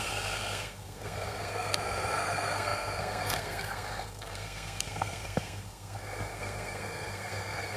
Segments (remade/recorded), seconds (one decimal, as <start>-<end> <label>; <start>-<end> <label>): 0.0-7.8 remade